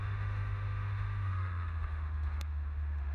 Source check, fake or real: fake